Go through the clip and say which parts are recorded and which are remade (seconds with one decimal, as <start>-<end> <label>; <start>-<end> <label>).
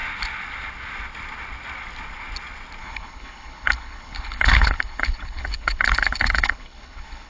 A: 0.0-2.8 recorded; 2.8-7.3 remade